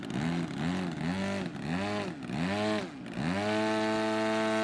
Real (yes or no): yes